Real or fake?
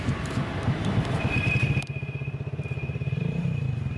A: fake